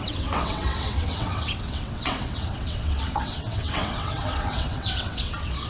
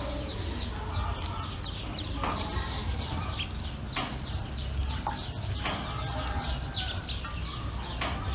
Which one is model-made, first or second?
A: first